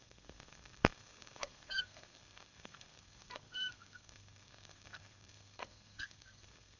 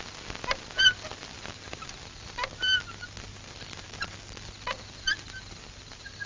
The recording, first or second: second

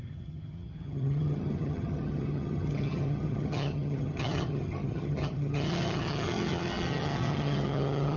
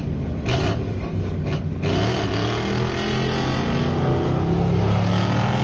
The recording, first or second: second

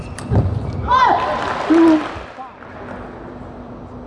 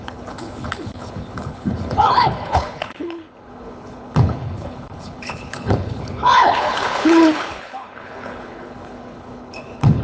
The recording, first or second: first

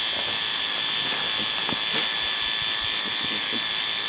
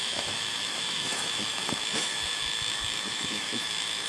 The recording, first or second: first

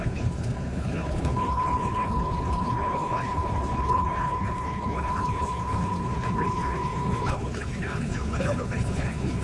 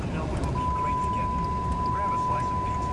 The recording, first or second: second